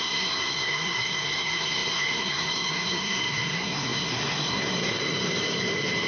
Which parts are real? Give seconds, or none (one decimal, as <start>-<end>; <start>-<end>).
5.0-6.1